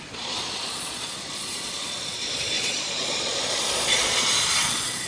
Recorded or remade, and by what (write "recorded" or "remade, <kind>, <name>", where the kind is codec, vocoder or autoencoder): remade, vocoder, Vocos